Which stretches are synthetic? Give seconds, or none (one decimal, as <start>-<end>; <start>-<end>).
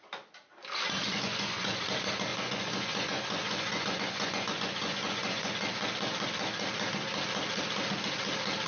1.0-1.8; 2.3-5.5